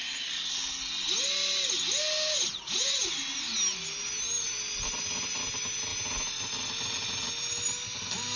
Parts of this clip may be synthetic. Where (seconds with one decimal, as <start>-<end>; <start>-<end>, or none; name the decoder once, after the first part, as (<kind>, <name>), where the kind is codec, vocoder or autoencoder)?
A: 2.4-3.2 (vocoder, Vocos)